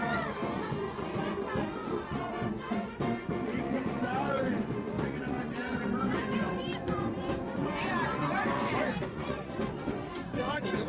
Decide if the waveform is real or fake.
fake